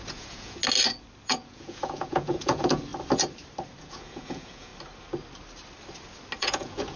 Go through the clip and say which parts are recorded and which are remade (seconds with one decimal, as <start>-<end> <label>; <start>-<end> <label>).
0.0-0.6 remade; 0.6-1.2 recorded; 1.2-2.9 remade; 2.9-3.8 recorded; 3.8-4.7 remade; 4.7-6.4 recorded; 6.4-7.0 remade